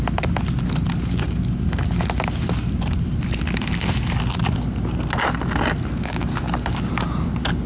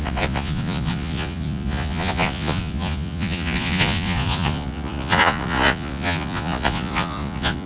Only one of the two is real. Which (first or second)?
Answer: first